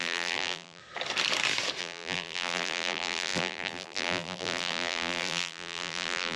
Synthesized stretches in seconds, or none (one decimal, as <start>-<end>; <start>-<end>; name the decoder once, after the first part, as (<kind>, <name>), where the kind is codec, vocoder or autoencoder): 0.0-0.8 (vocoder, BigVGAN v2); 1.8-6.4